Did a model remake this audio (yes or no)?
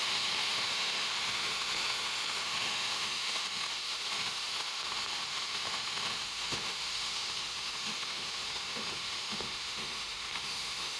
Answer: yes